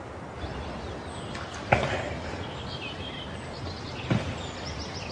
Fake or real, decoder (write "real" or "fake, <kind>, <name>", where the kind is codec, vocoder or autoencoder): real